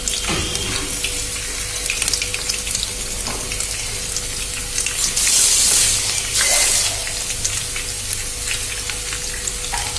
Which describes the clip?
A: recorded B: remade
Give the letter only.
A